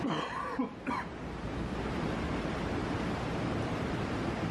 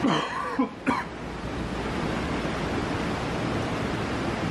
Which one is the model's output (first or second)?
first